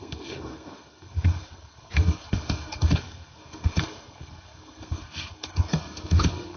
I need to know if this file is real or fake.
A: fake